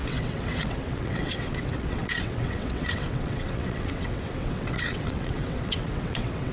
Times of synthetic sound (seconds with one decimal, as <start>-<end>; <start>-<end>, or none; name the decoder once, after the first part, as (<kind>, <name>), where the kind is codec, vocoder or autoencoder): 0.0-6.5 (vocoder, WaveNeXt)